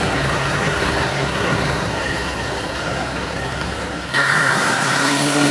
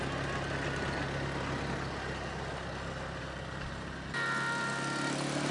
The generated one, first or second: first